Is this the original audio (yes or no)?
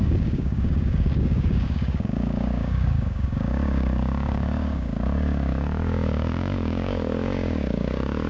no